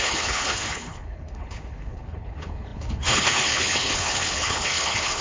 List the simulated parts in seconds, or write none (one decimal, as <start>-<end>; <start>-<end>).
0.0-5.2